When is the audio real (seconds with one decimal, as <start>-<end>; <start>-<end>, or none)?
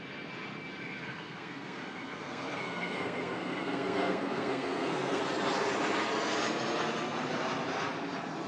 0.0-0.8; 5.2-8.5